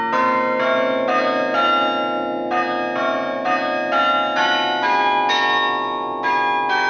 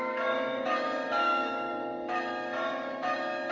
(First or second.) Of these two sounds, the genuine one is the first